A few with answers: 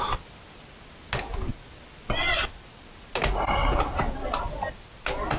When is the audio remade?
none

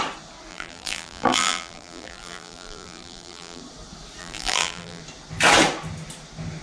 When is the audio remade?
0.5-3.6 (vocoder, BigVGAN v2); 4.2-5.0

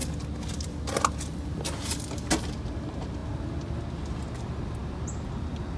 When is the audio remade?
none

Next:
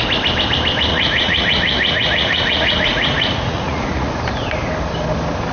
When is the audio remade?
0.9-4.2 (vocoder, Vocos)

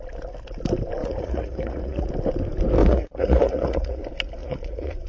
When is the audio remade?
1.0-2.1 (vocoder, Vocos); 2.8-4.0; 4.4-5.1